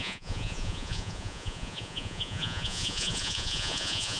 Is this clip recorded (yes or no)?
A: no